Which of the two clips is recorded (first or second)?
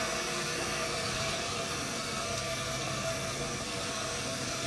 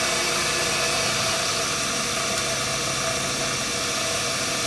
second